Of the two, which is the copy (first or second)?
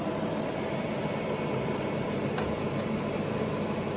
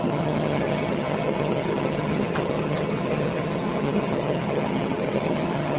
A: second